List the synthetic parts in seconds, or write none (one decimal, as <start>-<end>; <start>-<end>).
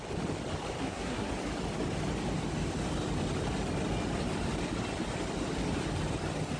0.8-1.3